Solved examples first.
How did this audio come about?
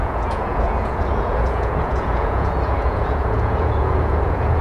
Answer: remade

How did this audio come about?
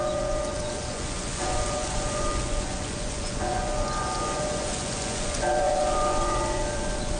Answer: remade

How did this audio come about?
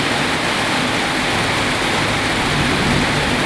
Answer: recorded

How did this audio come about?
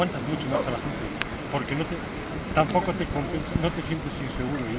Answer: recorded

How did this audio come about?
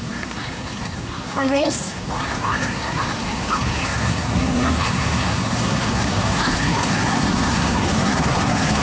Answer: remade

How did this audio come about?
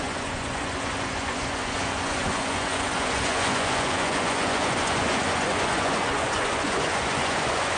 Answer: remade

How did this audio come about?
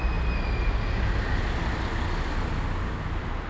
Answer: recorded